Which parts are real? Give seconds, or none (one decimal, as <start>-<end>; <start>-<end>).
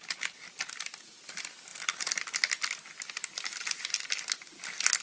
0.0-5.0